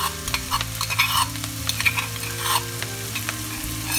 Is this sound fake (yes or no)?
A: no